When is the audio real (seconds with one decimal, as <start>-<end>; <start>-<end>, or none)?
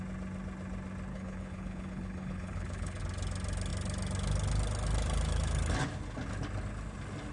0.0-1.1; 3.0-7.3